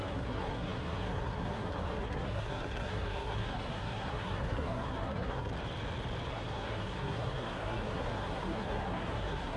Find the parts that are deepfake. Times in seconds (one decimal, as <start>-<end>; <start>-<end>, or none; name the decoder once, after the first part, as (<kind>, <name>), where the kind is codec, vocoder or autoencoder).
0.0-5.5 (codec, SNAC); 6.3-9.6